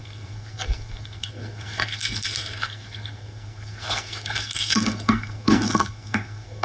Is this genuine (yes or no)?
no